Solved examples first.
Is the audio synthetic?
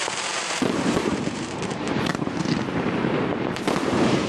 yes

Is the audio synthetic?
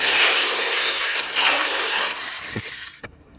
yes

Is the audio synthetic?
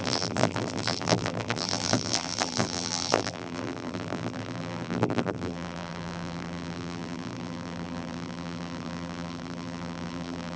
yes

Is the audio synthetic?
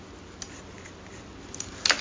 no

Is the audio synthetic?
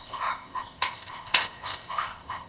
yes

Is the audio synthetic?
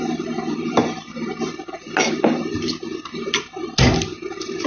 no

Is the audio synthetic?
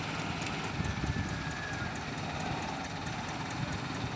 no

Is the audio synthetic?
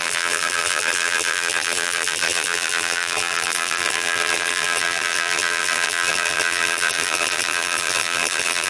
yes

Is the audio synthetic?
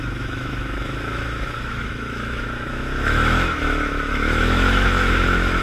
yes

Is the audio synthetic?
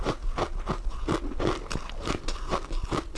no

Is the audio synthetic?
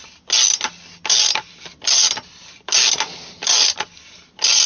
no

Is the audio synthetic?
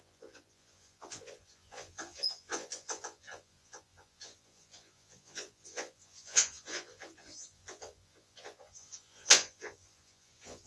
yes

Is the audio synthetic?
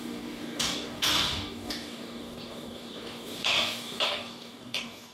yes